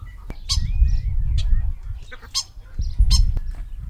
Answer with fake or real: real